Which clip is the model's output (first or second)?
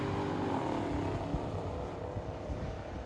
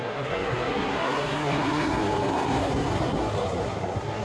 second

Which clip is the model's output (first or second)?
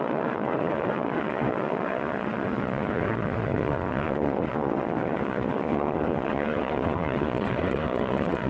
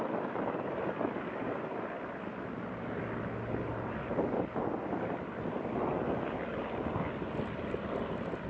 first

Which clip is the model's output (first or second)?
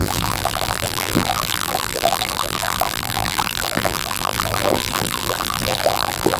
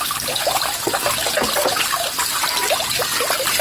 first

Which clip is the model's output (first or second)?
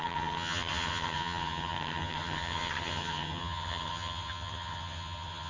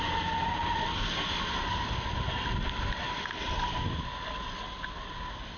first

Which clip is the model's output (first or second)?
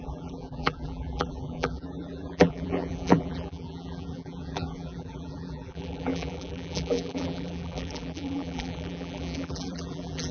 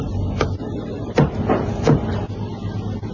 first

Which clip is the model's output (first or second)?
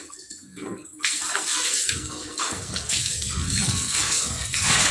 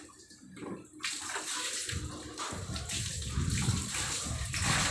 first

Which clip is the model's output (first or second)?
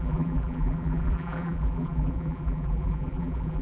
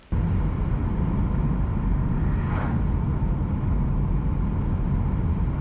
first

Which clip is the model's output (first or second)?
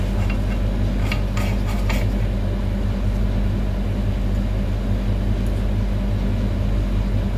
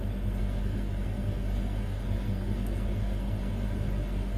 second